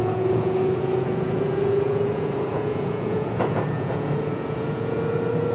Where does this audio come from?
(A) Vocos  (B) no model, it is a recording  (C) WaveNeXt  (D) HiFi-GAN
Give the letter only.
A